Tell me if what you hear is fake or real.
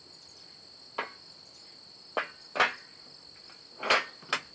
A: real